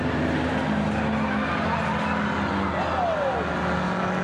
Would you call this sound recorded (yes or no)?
yes